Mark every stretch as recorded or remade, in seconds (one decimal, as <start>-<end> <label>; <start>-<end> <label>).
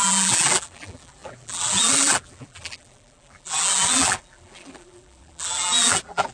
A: 0.0-6.3 remade